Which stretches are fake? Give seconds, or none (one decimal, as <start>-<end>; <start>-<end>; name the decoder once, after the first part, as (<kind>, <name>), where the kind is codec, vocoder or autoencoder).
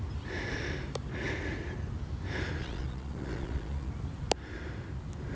2.6-3.9 (vocoder, Vocos)